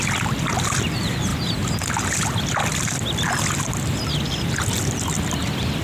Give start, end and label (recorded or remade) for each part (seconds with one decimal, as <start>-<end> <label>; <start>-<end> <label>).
0.0-5.8 recorded